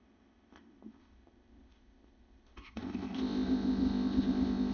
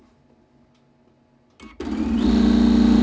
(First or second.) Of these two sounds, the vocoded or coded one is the first